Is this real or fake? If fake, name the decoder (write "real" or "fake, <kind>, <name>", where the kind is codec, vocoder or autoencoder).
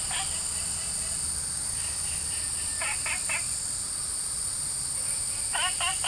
real